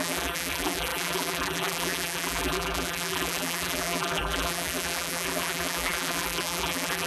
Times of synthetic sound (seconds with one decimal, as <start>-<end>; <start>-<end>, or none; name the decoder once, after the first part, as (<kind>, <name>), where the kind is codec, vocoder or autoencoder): 0.0-7.1 (vocoder, BigVGAN v2)